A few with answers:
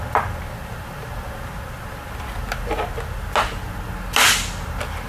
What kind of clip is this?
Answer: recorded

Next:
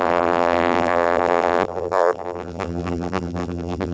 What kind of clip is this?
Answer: remade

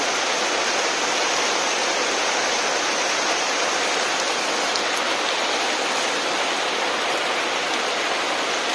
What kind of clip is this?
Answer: recorded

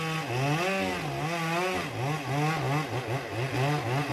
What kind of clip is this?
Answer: recorded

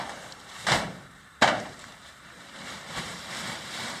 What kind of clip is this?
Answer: remade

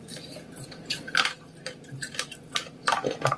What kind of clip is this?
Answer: remade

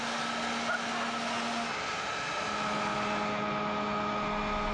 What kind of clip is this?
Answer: recorded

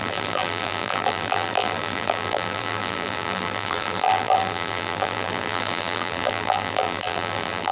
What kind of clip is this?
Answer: remade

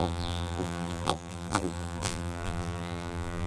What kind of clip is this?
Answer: remade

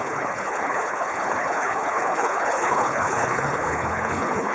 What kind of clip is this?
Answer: remade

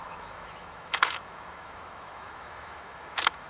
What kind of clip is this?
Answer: remade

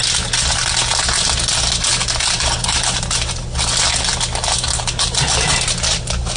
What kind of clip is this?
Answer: recorded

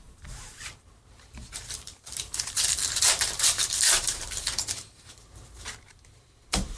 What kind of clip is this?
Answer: remade